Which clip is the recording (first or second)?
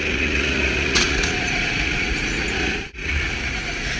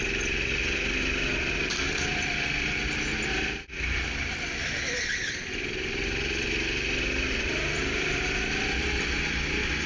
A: second